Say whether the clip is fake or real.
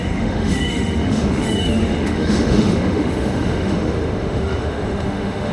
fake